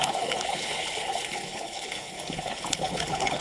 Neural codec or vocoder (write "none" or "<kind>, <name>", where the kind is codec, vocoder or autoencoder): codec, HILCodec